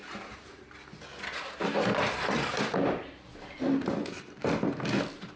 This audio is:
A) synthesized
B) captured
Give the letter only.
B